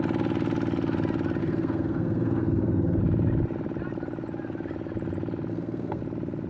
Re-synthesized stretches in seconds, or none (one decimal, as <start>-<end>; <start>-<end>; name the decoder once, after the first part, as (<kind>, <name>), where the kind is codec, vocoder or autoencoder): 1.4-3.0 (codec, SNAC); 5.5-6.0